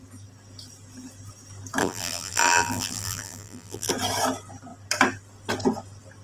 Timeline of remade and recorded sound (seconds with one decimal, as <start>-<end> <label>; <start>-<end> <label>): 0.0-1.8 recorded; 1.8-3.9 remade; 3.9-6.2 recorded